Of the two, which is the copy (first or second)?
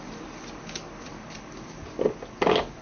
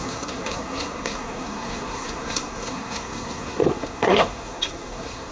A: second